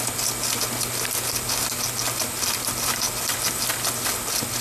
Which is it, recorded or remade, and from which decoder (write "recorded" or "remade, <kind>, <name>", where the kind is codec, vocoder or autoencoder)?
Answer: recorded